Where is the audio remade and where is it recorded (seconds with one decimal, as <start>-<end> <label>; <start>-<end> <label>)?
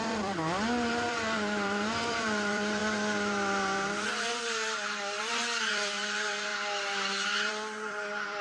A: 0.0-2.8 remade; 2.8-4.1 recorded; 4.1-6.5 remade; 6.5-7.5 recorded; 7.5-8.4 remade